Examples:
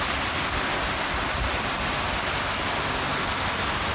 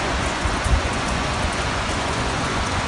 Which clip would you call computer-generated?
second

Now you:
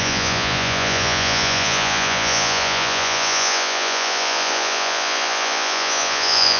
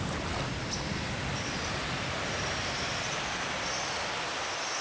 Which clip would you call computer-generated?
first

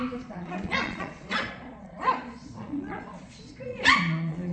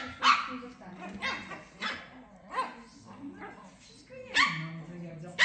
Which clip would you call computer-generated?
first